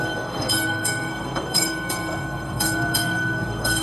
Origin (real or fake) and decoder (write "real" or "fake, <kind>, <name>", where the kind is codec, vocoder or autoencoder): fake, codec, SNAC